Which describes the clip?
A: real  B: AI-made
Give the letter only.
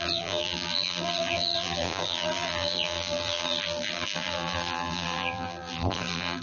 B